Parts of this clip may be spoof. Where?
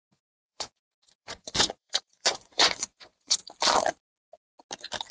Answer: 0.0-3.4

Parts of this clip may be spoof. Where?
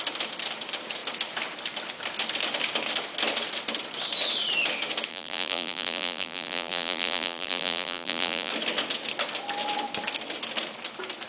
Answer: 5.1-8.5